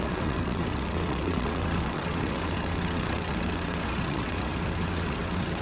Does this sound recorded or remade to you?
remade